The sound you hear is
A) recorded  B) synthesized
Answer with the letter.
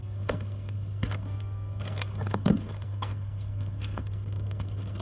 B